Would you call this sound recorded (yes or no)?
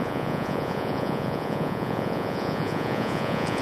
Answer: no